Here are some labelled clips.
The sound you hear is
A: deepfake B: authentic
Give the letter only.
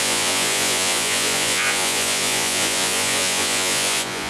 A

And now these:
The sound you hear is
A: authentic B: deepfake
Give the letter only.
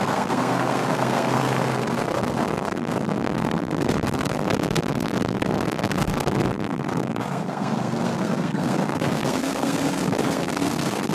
B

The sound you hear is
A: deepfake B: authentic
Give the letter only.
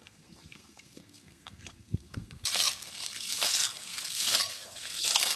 A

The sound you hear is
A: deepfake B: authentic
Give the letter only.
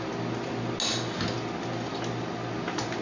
B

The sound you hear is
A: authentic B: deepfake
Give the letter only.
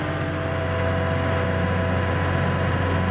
A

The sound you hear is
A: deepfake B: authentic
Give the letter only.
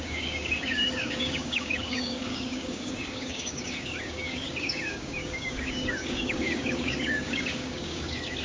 A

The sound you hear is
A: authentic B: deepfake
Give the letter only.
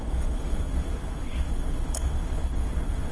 B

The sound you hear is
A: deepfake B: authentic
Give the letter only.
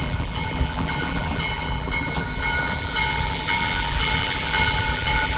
A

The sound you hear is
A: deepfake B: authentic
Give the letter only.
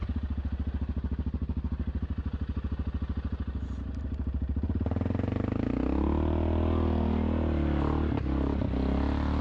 B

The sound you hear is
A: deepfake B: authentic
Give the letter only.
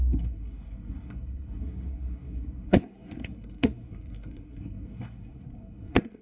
A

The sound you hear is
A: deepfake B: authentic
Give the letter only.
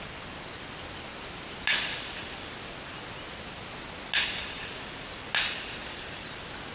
B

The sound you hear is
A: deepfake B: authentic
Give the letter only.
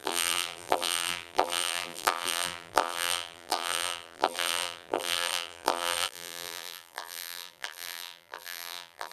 A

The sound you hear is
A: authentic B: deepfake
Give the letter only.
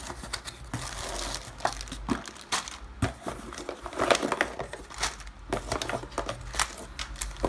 A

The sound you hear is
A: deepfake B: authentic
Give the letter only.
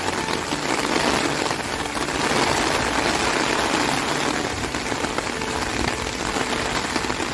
B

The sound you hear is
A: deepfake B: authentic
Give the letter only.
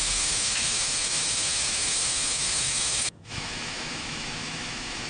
A